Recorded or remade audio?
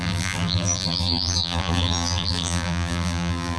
remade